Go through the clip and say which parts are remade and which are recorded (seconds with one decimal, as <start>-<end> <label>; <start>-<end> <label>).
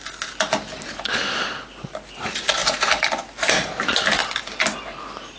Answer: 0.0-5.4 recorded